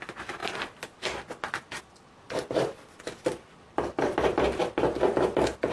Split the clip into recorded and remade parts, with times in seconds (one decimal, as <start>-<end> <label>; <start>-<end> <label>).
0.0-5.7 recorded

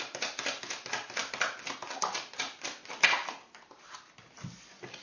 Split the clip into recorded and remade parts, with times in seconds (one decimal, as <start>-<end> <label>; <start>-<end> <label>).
0.0-5.0 recorded